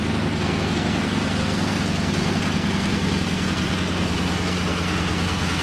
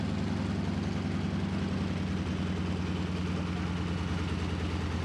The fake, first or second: first